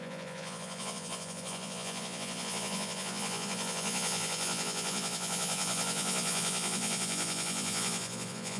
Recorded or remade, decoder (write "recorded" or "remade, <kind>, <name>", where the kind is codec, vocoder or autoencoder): remade, vocoder, Vocos